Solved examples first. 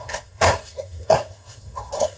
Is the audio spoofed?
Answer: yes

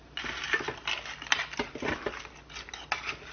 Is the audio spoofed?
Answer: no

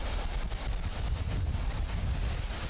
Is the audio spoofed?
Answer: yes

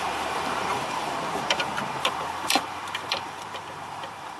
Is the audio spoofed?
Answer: yes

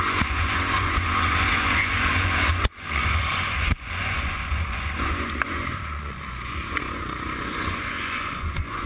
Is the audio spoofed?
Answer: yes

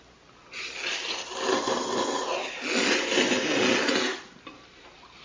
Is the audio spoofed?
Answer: no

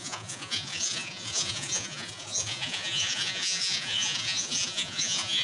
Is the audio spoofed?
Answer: yes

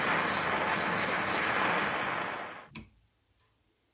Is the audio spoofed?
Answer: no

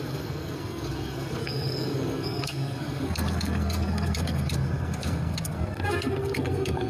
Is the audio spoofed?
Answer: yes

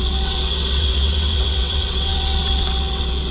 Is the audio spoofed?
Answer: yes